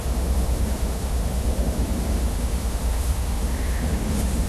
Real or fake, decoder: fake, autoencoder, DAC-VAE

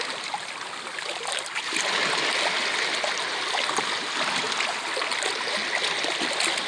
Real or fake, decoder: real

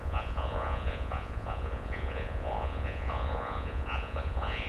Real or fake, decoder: fake, vocoder, Vocos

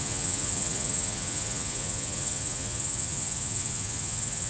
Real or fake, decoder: fake, vocoder, Vocos